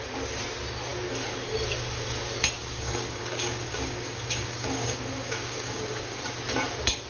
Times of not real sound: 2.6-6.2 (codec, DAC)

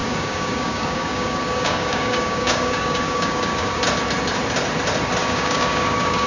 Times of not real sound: 0.0-3.8 (codec, DAC); 5.2-6.3

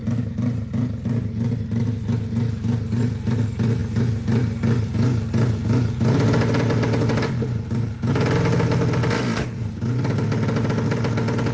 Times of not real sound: none

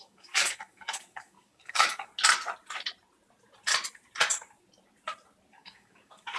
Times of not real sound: 0.0-2.1 (codec, DAC); 5.5-6.4